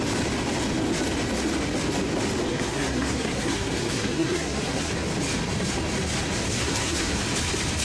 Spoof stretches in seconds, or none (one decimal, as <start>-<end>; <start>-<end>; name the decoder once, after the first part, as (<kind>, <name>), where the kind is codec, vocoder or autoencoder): 2.5-4.9 (codec, SNAC); 6.5-7.2